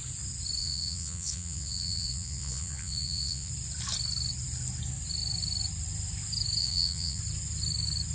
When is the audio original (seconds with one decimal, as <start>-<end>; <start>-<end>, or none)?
0.0-0.6; 3.5-6.6; 7.2-8.1